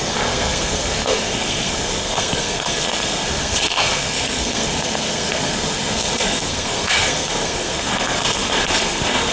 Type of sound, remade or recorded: remade